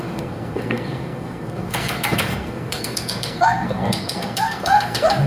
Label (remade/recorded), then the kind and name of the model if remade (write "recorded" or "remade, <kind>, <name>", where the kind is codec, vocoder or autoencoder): remade, codec, SNAC